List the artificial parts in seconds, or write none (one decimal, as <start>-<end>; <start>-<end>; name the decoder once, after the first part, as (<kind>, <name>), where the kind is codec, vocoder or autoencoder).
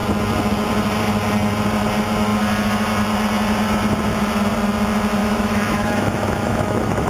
5.2-7.1 (autoencoder, DAC-VAE)